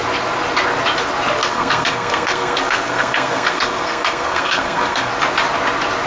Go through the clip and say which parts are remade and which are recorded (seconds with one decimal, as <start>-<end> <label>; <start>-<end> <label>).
0.0-1.4 recorded; 1.4-5.1 remade; 5.1-6.1 recorded